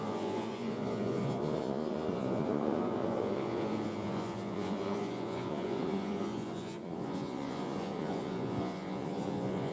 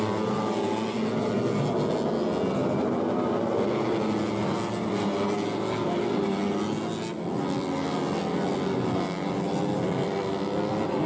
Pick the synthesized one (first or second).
first